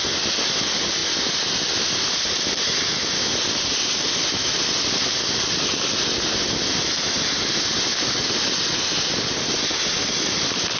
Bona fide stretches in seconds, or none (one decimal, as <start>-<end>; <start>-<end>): 0.0-10.8